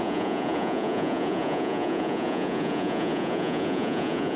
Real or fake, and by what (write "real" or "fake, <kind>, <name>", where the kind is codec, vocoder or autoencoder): fake, vocoder, Vocos